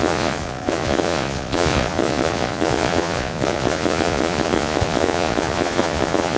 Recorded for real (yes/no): no